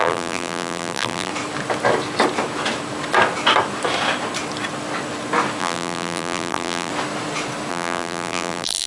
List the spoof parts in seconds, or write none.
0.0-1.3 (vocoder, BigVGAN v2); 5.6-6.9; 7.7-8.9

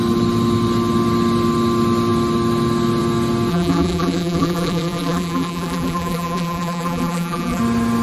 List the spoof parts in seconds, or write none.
3.5-7.6 (vocoder, BigVGAN v2)